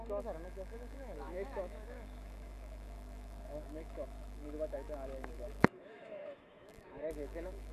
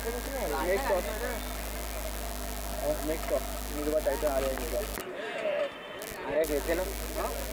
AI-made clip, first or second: first